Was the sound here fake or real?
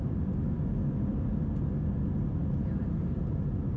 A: real